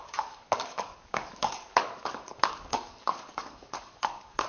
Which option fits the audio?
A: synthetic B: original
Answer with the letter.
A